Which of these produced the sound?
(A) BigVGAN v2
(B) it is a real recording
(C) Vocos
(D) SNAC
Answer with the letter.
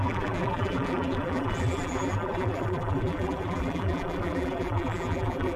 A